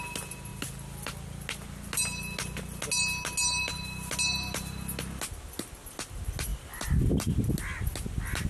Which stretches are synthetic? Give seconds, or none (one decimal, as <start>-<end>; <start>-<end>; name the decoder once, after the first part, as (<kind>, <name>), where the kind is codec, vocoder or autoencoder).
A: none